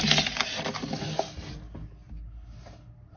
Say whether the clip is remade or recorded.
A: recorded